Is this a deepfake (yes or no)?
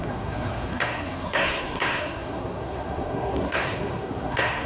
yes